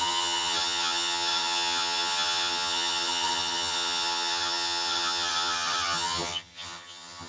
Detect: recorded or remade remade